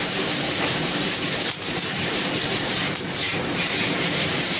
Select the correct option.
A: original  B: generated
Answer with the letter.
B